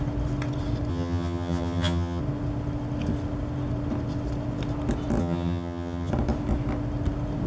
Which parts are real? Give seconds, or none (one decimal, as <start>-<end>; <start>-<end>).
0.0-0.9; 2.2-5.2; 6.1-7.5